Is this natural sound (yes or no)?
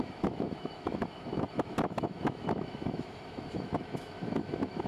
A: no